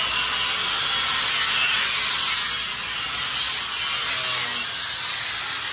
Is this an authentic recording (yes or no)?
yes